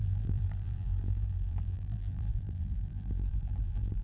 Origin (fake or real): fake